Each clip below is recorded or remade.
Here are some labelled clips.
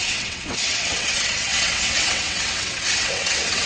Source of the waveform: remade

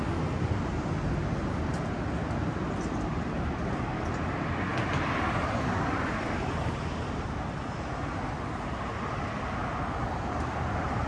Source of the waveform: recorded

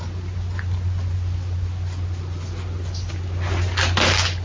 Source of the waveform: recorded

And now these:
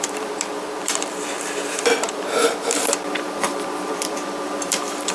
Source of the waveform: remade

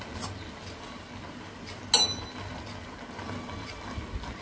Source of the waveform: recorded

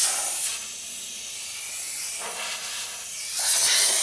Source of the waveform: recorded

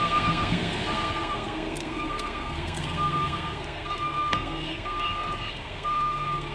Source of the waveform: remade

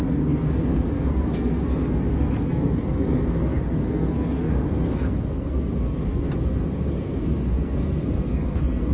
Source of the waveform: remade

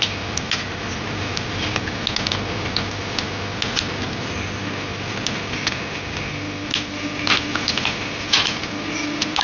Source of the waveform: recorded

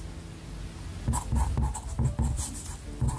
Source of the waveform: recorded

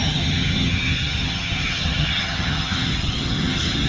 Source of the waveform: remade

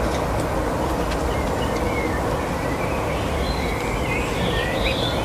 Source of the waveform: recorded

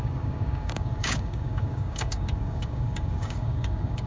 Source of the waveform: remade